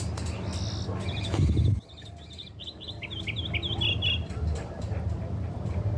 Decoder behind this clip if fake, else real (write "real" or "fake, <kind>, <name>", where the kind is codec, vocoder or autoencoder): real